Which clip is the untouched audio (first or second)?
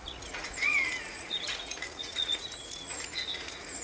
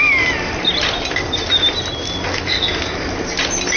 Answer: second